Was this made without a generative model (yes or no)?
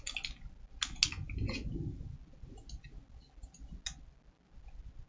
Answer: yes